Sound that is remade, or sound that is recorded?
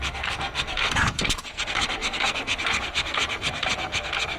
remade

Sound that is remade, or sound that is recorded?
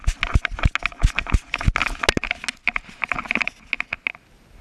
recorded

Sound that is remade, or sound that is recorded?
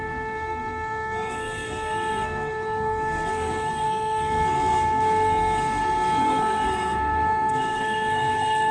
remade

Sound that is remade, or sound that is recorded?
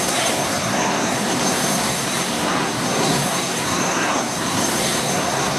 remade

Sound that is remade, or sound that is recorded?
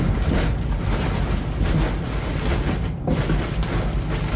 recorded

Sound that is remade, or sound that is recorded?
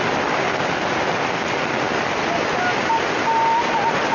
recorded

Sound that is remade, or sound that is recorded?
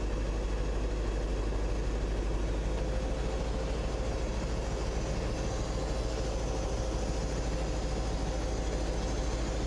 recorded